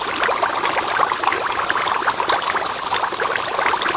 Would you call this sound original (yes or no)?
yes